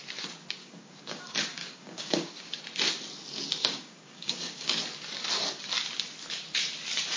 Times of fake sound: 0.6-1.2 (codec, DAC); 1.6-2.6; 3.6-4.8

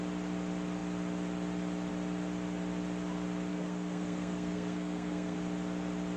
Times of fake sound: 3.5-5.4 (codec, SNAC)

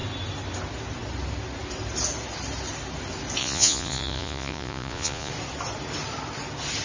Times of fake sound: 3.4-5.3 (vocoder, Vocos)

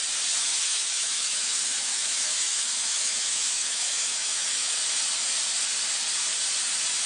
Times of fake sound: 0.5-4.8 (autoencoder, DAC-VAE)

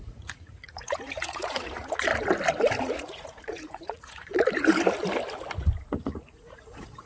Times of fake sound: 0.0-2.1 (vocoder, Vocos); 2.8-4.3; 5.9-7.1

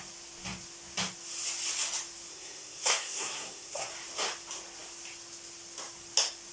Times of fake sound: 2.3-3.9 (codec, SNAC)

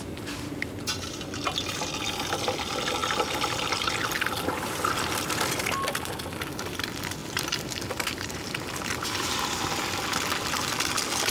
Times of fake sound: 7.2-8.7 (vocoder, BigVGAN v2)

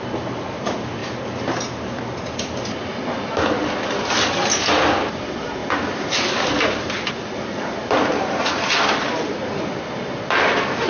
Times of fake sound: none